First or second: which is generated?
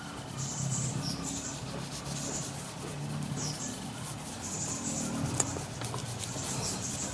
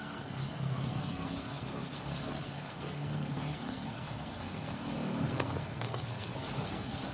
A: second